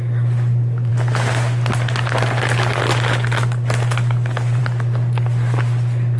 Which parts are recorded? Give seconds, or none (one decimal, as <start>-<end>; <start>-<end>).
0.0-6.2